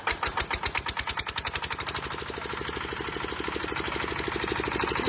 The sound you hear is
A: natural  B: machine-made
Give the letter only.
A